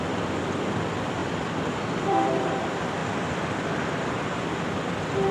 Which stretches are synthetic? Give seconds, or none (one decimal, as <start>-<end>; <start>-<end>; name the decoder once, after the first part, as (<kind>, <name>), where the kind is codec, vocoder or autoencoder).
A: 0.0-1.2 (vocoder, BigVGAN v2); 1.8-3.0; 3.8-5.3